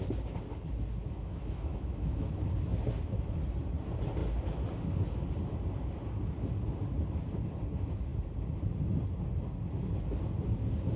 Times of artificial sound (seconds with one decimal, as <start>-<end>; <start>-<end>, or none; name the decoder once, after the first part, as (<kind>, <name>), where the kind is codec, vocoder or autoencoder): 1.0-2.3 (autoencoder, DAC-VAE)